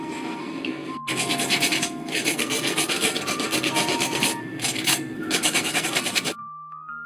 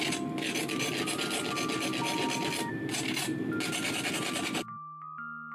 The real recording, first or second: second